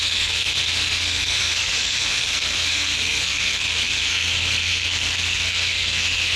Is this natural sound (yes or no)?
no